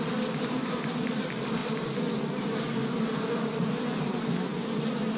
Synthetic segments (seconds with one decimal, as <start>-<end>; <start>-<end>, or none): none

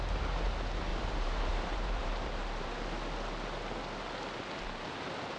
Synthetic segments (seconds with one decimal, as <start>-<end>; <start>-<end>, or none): 0.9-2.8

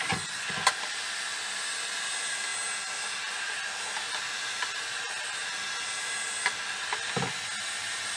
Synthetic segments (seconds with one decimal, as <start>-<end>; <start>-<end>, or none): none

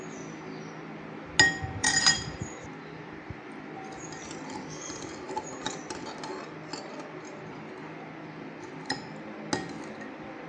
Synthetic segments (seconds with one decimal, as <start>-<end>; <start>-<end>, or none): 1.8-2.4